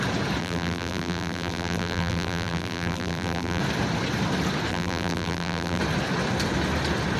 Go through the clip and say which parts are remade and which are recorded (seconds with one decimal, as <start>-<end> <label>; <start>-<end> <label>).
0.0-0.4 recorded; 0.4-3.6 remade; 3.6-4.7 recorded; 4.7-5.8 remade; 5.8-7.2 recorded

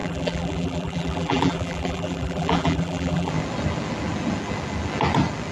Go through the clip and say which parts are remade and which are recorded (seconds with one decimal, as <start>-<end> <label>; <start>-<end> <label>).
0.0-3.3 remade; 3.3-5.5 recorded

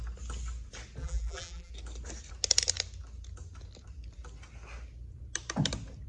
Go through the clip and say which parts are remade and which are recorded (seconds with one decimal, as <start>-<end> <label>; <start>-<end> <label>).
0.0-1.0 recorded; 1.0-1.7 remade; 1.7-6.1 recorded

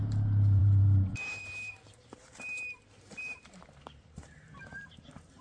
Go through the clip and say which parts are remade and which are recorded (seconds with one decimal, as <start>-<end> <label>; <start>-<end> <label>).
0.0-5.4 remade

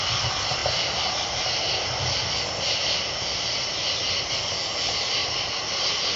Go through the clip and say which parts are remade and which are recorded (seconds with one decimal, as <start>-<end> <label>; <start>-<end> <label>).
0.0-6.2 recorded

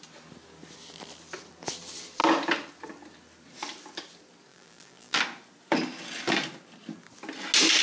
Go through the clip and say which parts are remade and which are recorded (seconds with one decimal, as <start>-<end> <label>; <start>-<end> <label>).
0.0-4.5 recorded; 4.5-5.2 remade; 5.2-7.8 recorded